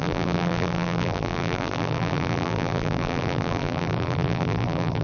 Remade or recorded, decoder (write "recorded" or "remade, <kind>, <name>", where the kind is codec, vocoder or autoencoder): remade, vocoder, BigVGAN v2